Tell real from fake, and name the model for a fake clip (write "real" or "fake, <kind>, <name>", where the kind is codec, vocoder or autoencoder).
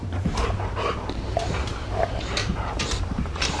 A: fake, vocoder, BigVGAN v2